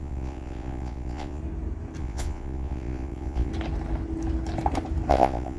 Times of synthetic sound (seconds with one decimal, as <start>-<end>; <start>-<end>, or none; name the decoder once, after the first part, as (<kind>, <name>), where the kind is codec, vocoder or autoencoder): 0.0-1.4 (vocoder, Vocos); 2.0-3.5; 5.1-5.6